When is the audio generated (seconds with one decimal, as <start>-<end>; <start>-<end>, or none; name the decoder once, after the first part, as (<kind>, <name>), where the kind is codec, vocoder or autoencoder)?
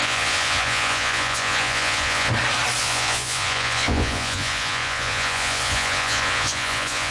0.0-2.3 (vocoder, Vocos); 2.8-7.1